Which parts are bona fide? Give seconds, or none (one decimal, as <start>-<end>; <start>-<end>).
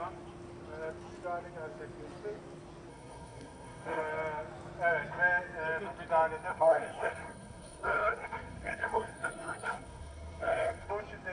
0.0-2.9; 4.0-6.5; 10.9-11.3